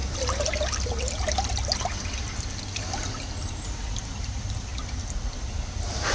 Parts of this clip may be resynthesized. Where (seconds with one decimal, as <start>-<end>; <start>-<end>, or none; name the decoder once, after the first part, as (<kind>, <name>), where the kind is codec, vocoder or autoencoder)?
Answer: 3.7-4.7 (vocoder, BigVGAN v2)